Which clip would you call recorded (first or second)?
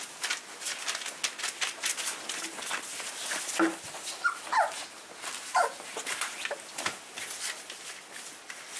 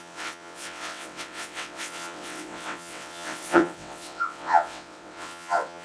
first